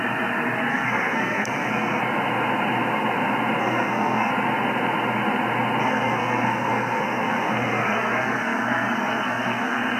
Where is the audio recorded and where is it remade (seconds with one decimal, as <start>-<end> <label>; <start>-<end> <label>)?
0.0-0.7 recorded; 0.7-2.0 remade; 2.0-3.6 recorded; 3.6-4.3 remade; 4.3-5.8 recorded; 5.8-10.0 remade